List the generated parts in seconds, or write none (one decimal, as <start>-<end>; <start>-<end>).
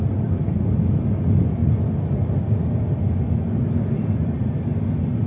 none